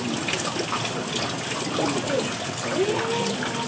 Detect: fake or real real